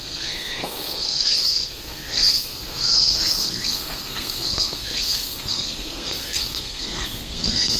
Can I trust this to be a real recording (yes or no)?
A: no